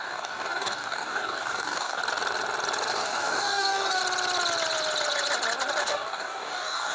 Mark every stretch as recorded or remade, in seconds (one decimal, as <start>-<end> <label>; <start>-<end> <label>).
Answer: 0.0-2.0 remade; 2.0-2.9 recorded; 2.9-4.0 remade; 4.0-5.8 recorded; 5.8-6.9 remade